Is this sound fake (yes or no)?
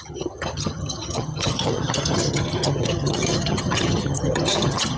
yes